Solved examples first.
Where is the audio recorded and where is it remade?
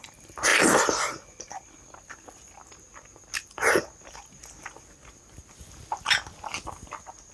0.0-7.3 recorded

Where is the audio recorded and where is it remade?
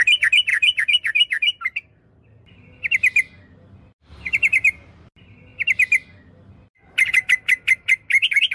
0.0-0.5 recorded; 0.5-2.6 remade; 2.6-8.5 recorded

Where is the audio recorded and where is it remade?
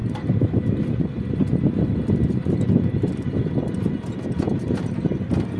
0.0-5.6 recorded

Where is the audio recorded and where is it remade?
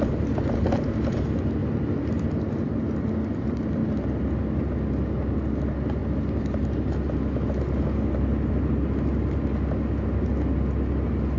0.0-11.4 recorded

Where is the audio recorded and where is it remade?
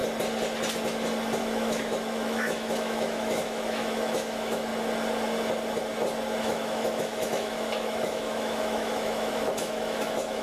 0.0-1.4 recorded; 1.4-4.7 remade; 4.7-6.4 recorded; 6.4-10.4 remade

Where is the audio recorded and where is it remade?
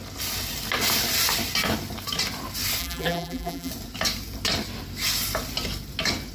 0.0-2.8 recorded; 2.8-3.7 remade; 3.7-6.3 recorded